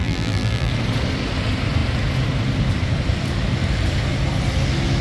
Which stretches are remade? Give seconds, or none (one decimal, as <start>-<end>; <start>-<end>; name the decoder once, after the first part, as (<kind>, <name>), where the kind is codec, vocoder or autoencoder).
0.0-0.7 (vocoder, BigVGAN v2)